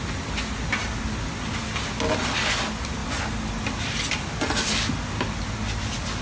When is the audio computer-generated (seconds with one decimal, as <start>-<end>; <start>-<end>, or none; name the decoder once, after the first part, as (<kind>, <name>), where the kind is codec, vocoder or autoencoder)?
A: none